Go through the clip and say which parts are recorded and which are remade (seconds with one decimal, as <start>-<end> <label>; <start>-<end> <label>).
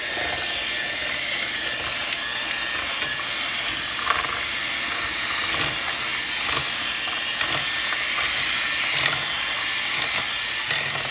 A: 0.0-11.1 recorded